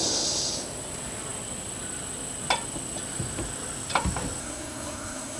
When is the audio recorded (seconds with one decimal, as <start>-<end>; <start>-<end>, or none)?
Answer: 0.0-4.4